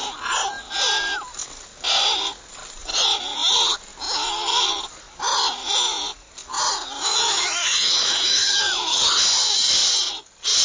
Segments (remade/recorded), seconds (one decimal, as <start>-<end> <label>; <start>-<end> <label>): 0.0-7.1 recorded; 7.1-9.0 remade; 9.0-10.6 recorded